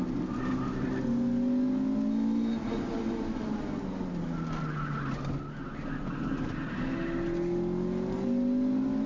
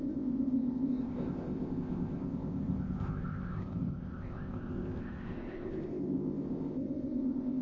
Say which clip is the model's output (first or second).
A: second